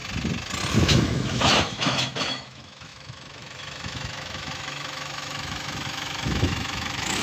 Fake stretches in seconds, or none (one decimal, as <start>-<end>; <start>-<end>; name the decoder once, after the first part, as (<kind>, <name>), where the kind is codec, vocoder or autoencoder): 0.7-7.2 (autoencoder, DAC-VAE)